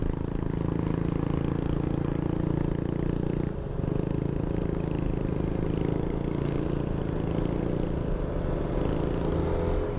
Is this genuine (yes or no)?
yes